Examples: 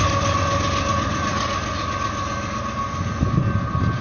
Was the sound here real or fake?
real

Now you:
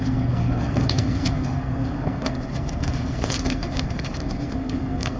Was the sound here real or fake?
fake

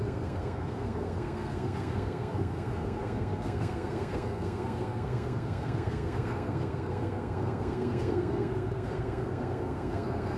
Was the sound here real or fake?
fake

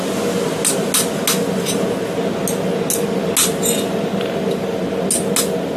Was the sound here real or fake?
real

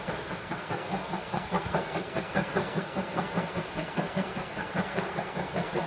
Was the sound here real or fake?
fake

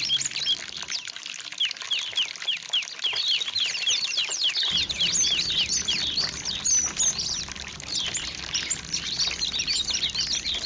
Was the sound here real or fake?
real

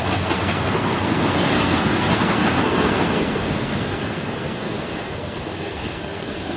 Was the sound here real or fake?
fake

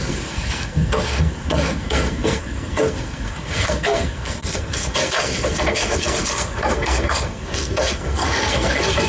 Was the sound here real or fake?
fake